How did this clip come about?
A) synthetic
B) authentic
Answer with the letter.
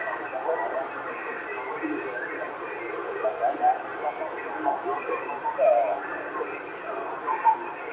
B